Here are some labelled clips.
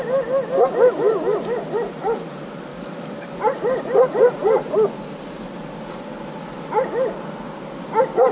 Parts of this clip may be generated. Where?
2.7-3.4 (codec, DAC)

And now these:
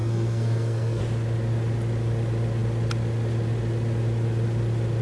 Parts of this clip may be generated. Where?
0.0-1.0 (codec, SNAC)

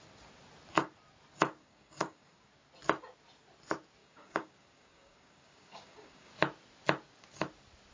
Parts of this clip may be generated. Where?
1.6-2.5 (codec, DAC); 4.0-6.3

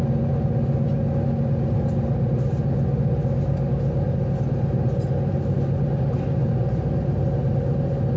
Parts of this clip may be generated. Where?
none